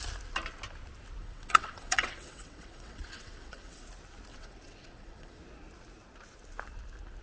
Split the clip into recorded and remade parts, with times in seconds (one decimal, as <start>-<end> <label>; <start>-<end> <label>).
0.0-1.2 recorded; 1.2-3.8 remade; 3.8-4.3 recorded; 4.3-5.4 remade; 5.4-7.2 recorded